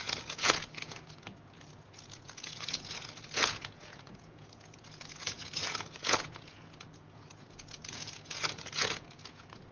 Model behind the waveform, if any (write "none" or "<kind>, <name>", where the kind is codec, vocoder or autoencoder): vocoder, Vocos